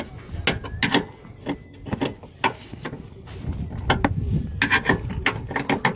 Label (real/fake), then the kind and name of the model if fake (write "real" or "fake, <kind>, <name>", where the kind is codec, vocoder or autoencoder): real